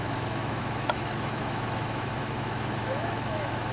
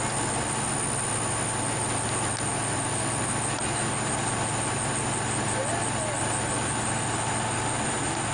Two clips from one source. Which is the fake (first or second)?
first